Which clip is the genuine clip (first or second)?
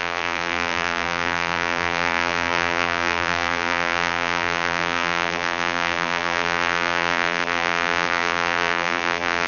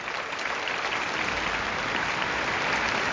second